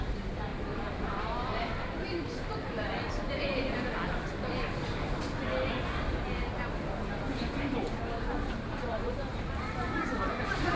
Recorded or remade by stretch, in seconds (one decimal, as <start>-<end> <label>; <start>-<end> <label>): 0.0-0.5 recorded; 0.5-3.1 remade; 3.1-10.8 recorded